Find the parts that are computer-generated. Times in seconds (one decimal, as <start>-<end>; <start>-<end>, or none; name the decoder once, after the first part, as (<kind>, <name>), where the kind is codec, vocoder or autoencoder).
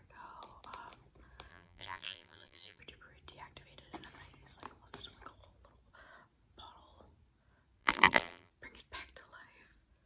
1.5-2.8 (vocoder, BigVGAN v2); 7.8-8.5